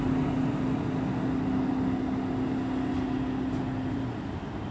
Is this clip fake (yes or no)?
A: no